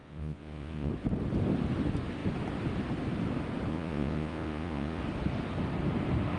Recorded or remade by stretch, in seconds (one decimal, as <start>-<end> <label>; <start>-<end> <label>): 0.0-0.9 remade; 0.9-3.7 recorded; 3.7-5.0 remade; 5.0-6.4 recorded

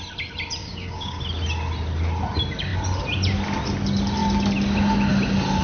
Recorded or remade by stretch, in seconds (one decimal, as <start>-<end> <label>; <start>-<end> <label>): 0.0-0.6 recorded; 0.6-1.2 remade; 1.2-5.6 recorded

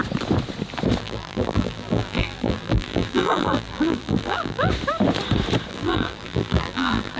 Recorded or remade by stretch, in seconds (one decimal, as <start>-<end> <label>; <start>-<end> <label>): 0.0-1.0 recorded; 1.0-4.7 remade; 4.7-5.7 recorded; 5.7-7.2 remade

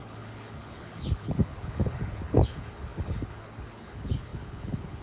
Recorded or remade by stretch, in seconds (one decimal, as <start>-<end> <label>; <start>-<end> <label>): 0.0-5.0 remade

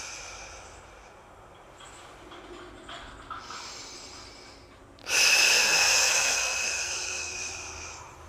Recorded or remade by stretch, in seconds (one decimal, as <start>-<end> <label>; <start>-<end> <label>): 0.0-5.4 recorded; 5.4-7.3 remade; 7.3-8.3 recorded